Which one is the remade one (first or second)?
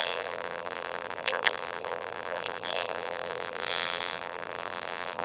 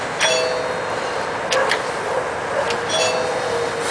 first